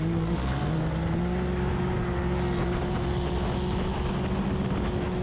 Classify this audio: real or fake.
real